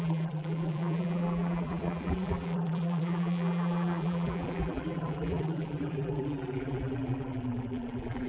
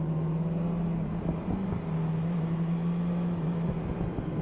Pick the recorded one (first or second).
second